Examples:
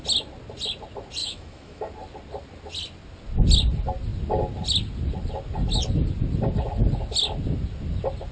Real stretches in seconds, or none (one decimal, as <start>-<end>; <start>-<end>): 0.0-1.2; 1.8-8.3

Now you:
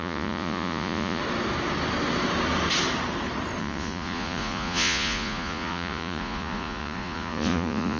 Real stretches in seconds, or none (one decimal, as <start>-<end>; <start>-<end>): 1.2-3.6

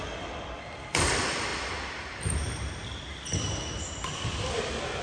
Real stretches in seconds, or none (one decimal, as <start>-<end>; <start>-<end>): 1.5-4.5

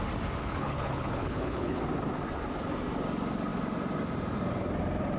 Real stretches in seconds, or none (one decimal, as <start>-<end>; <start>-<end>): 0.0-0.4; 1.8-5.2

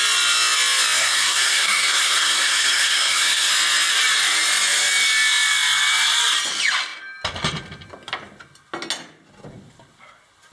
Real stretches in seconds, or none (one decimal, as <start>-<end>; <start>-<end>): 0.0-1.0; 3.5-10.5

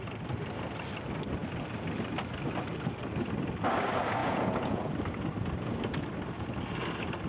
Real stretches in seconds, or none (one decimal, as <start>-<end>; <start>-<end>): 0.0-4.2; 4.9-7.3

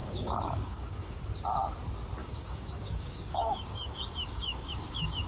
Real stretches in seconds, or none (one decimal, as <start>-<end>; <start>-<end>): 1.2-2.2